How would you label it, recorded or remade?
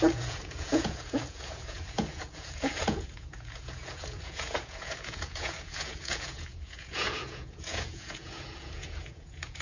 remade